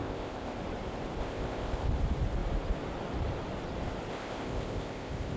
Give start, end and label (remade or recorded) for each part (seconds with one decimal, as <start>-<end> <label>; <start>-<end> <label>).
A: 0.0-0.6 remade; 0.6-1.2 recorded; 1.2-1.9 remade; 1.9-4.1 recorded; 4.1-5.4 remade